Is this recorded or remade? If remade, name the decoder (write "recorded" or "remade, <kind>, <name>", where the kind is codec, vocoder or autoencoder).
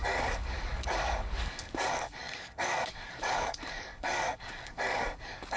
remade, codec, DAC